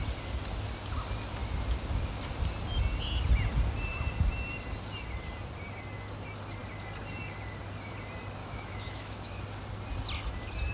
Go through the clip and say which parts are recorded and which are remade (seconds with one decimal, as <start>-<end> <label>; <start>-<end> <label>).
0.0-8.4 recorded; 8.4-9.4 remade; 9.4-10.7 recorded